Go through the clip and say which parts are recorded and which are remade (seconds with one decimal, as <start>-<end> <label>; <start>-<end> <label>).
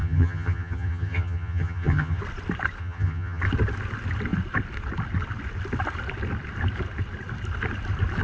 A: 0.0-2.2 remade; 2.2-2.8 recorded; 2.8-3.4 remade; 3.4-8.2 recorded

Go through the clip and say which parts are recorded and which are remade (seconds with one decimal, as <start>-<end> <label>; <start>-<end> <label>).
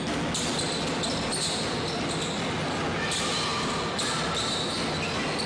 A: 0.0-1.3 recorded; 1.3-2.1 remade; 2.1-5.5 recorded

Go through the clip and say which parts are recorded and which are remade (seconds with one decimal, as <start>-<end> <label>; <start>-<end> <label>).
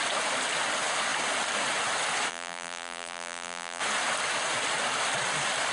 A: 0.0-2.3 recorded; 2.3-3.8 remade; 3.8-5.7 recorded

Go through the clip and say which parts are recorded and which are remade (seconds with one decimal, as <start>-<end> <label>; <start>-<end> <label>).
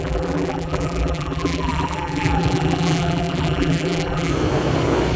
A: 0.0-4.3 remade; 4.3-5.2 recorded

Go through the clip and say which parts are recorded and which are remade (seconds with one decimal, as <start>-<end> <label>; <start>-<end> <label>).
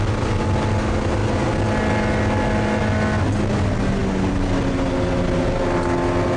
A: 0.0-6.4 recorded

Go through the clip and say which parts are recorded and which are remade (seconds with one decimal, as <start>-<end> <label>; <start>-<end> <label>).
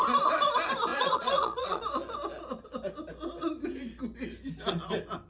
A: 0.0-0.9 recorded; 0.9-1.8 remade; 1.8-5.3 recorded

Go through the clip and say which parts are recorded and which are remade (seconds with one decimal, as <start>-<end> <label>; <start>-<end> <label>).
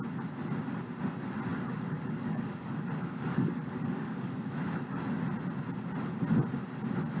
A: 0.0-1.5 recorded; 1.5-5.0 remade; 5.0-7.2 recorded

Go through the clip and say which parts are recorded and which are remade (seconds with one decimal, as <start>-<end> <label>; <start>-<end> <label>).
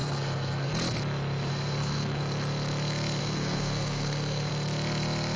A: 0.0-0.7 remade; 0.7-1.5 recorded; 1.5-2.2 remade; 2.2-3.2 recorded; 3.2-4.5 remade; 4.5-5.4 recorded